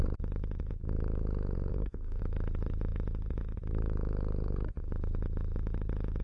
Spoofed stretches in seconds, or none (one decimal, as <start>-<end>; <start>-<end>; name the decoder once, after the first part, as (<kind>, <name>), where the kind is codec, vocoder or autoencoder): 1.7-2.2 (codec, SNAC)